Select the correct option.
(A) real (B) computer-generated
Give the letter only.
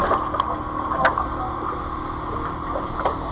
A